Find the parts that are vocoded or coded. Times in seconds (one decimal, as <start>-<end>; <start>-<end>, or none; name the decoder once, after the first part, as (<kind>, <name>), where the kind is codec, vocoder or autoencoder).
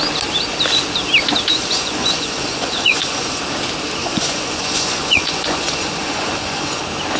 1.5-3.4 (vocoder, Vocos); 4.0-6.8